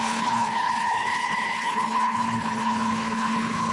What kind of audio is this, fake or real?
fake